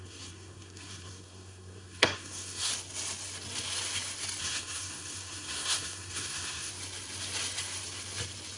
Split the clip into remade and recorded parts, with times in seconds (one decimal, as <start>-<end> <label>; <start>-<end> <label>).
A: 0.0-2.7 remade; 2.7-4.4 recorded; 4.4-6.7 remade; 6.7-8.6 recorded